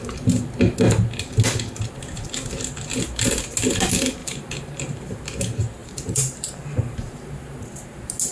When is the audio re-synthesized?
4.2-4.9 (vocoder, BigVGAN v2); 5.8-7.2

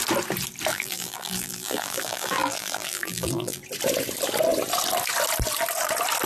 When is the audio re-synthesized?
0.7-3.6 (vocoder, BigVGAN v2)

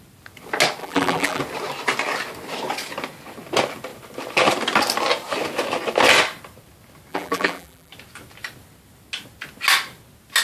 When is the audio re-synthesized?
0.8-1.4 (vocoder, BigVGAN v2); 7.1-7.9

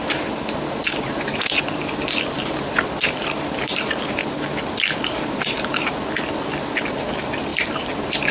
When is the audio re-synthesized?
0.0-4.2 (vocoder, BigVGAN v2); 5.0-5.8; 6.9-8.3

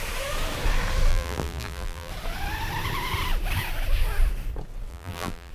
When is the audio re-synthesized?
1.1-2.1 (vocoder, BigVGAN v2); 4.9-5.5

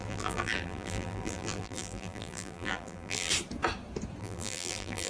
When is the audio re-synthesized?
0.0-3.3 (vocoder, BigVGAN v2); 4.2-5.1

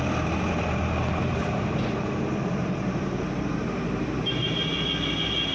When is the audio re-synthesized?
1.4-4.7 (vocoder, BigVGAN v2)